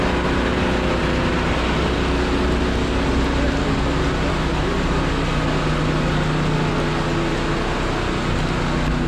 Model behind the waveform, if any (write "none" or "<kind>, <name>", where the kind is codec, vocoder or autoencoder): none